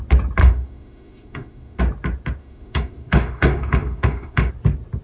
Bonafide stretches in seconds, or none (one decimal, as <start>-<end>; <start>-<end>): 0.0-0.4; 1.8-2.4; 4.5-5.0